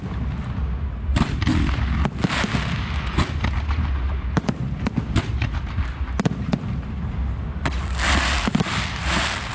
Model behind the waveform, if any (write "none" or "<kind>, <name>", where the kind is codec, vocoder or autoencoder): none